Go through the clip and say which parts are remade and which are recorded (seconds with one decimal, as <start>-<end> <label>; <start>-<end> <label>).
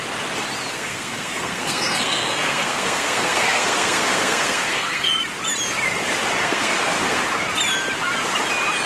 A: 0.0-0.7 recorded; 0.7-5.1 remade; 5.1-6.4 recorded; 6.4-7.2 remade; 7.2-8.9 recorded